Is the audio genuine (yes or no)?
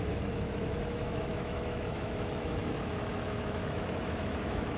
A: no